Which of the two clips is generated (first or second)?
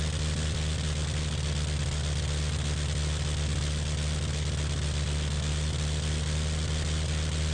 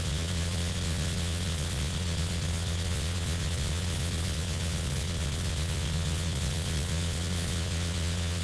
second